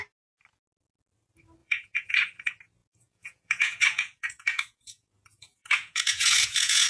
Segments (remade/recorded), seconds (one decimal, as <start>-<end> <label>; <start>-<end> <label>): 0.0-1.6 recorded; 1.6-2.1 remade; 2.1-2.8 recorded; 2.8-6.9 remade